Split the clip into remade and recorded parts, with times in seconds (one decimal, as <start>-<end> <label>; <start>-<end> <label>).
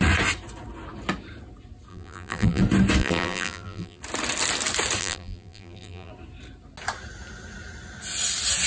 0.0-1.9 recorded; 1.9-2.6 remade; 2.6-3.0 recorded; 3.0-4.0 remade; 4.0-5.0 recorded; 5.0-6.1 remade; 6.1-8.7 recorded